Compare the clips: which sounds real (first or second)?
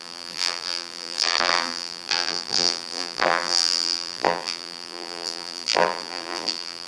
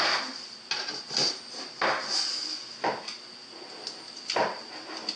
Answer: second